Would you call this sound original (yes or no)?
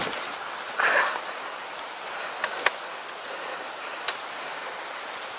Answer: yes